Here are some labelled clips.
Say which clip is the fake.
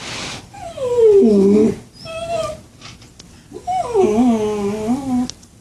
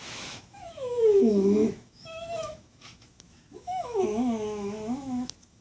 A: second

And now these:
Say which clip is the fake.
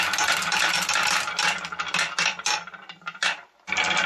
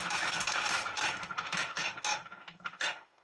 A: second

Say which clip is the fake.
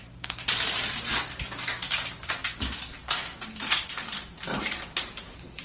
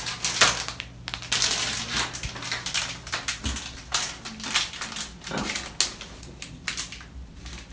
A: first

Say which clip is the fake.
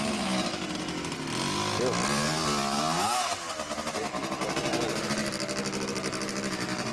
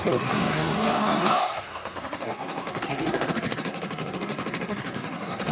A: second